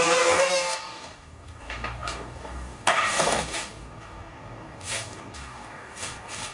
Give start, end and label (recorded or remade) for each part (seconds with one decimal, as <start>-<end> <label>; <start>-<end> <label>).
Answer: 0.0-6.5 remade